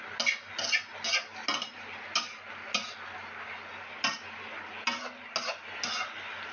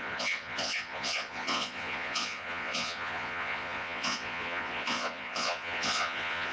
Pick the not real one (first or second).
second